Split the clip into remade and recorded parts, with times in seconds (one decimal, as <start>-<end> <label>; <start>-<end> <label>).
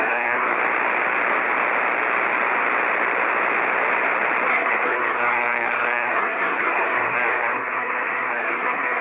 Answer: 0.0-0.6 remade; 0.6-4.5 recorded; 4.5-9.0 remade